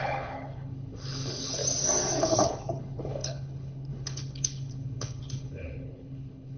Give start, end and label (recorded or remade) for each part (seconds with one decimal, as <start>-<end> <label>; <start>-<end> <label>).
0.0-1.6 remade; 1.6-2.2 recorded; 2.2-6.6 remade